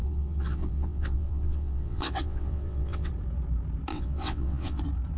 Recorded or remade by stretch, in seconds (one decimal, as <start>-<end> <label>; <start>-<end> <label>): 0.0-3.1 remade; 3.1-3.9 recorded; 3.9-4.8 remade; 4.8-5.2 recorded